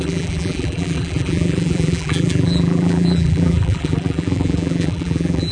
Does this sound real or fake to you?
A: fake